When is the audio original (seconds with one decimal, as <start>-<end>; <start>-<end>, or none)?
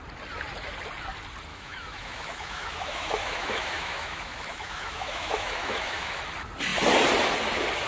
0.0-1.5; 6.2-7.9